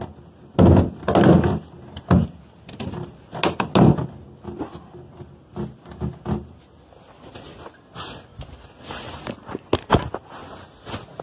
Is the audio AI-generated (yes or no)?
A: no